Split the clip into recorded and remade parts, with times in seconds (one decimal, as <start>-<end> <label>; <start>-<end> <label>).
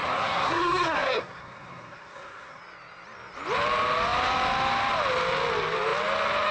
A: 0.0-2.6 remade; 2.6-6.5 recorded